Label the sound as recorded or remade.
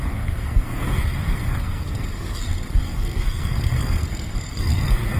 remade